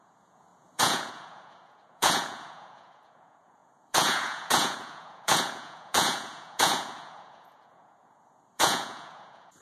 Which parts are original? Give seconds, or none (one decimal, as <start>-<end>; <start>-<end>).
none